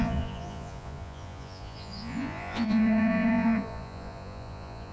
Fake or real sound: fake